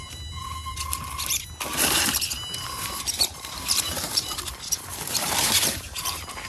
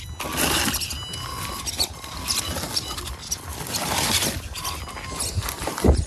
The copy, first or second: first